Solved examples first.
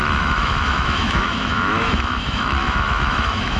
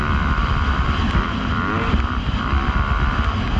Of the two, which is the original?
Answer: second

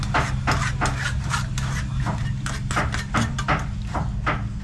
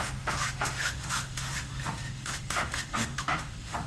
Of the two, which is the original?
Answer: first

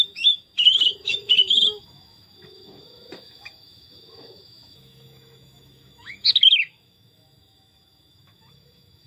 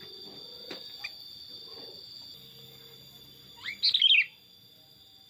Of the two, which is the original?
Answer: second